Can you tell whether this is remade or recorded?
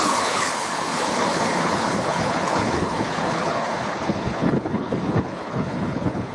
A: remade